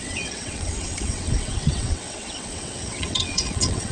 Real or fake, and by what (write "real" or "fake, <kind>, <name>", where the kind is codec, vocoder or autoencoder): fake, vocoder, WaveNeXt